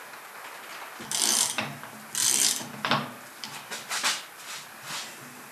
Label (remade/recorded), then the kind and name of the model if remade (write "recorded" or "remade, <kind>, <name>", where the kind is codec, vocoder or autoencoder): recorded